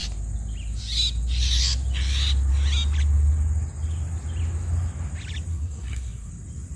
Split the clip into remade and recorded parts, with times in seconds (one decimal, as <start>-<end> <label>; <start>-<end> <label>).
0.0-5.5 recorded; 5.5-6.3 remade; 6.3-6.8 recorded